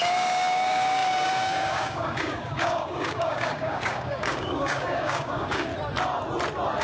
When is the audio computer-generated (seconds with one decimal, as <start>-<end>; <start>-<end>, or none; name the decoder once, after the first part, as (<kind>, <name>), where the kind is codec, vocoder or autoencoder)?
0.0-5.7 (codec, DAC)